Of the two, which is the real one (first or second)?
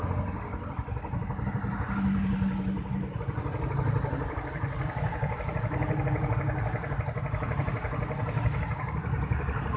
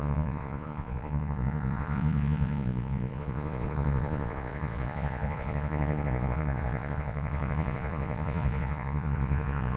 first